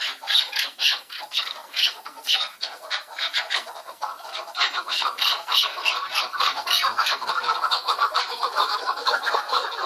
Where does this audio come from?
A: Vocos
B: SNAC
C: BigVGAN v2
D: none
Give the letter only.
B